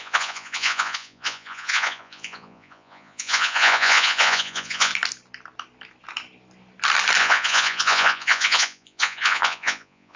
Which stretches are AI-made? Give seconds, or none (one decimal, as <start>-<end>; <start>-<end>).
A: 0.0-4.9; 7.2-10.2